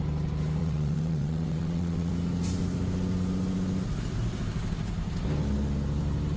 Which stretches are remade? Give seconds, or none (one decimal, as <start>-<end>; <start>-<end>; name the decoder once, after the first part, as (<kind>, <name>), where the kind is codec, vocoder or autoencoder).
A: 0.6-2.1 (vocoder, WaveNeXt)